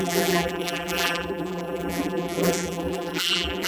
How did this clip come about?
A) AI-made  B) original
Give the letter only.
A